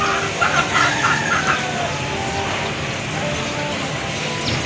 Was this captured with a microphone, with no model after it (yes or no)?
yes